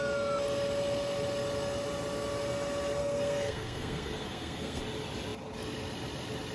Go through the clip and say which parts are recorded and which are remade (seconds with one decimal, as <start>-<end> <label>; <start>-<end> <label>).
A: 0.0-3.0 recorded; 3.0-4.8 remade; 4.8-6.5 recorded